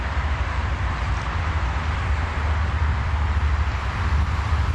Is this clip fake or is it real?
fake